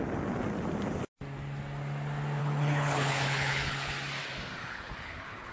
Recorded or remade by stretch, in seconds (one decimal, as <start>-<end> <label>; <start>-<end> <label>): 0.0-2.4 recorded; 2.4-3.9 remade; 3.9-4.6 recorded; 4.6-5.5 remade